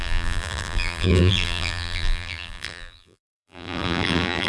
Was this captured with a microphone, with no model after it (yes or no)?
no